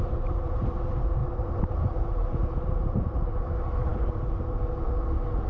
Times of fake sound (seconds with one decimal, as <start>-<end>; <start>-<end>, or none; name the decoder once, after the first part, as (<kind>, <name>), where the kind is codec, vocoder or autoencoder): 0.0-5.5 (vocoder, BigVGAN v2)